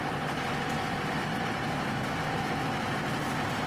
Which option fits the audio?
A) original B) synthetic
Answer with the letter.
A